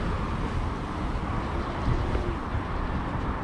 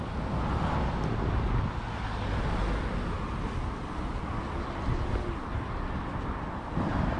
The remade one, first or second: first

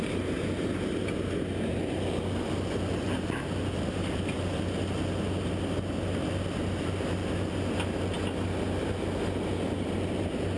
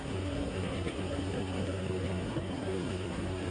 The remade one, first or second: second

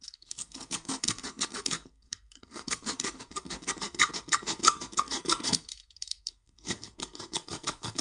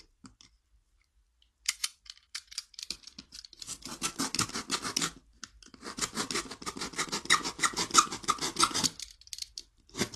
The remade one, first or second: first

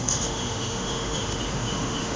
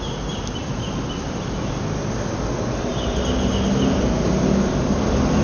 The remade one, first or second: first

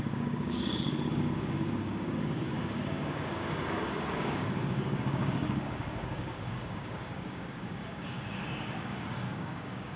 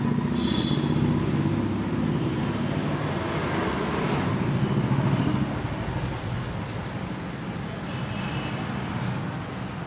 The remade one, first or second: first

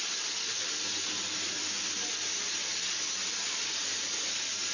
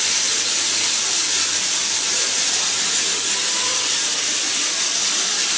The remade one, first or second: second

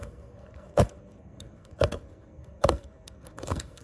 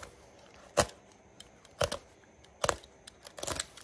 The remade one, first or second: first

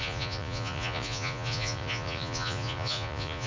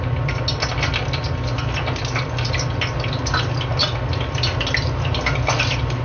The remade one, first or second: first